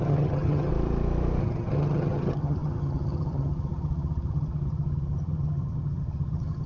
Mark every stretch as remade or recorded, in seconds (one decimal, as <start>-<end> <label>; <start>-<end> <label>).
0.0-0.7 remade; 0.7-1.4 recorded; 1.4-6.7 remade